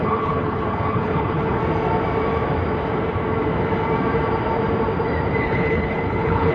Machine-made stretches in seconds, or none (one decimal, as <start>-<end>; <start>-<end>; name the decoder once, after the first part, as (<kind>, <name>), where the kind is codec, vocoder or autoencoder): 0.0-1.6 (codec, HILCodec); 5.4-6.5